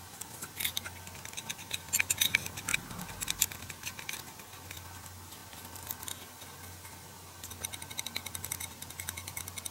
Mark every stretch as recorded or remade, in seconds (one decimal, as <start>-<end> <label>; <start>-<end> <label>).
0.0-9.7 recorded